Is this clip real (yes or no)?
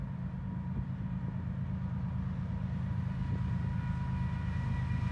yes